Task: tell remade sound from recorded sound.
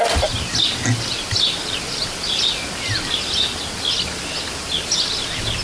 recorded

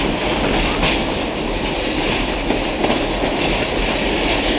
recorded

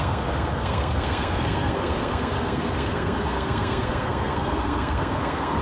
remade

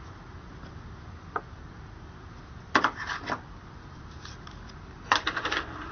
recorded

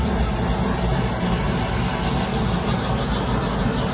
recorded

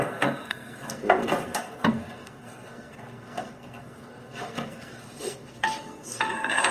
remade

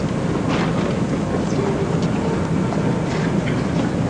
recorded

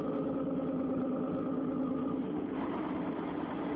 recorded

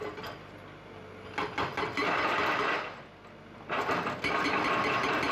recorded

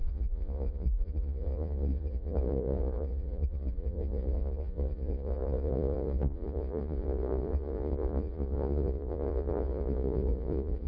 remade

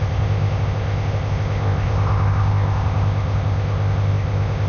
remade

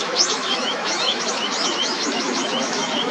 remade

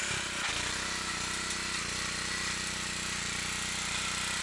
recorded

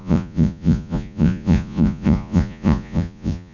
remade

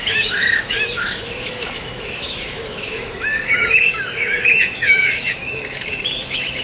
remade